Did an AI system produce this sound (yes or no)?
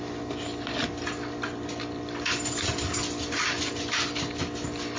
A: no